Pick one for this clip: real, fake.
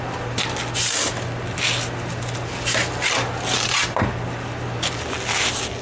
real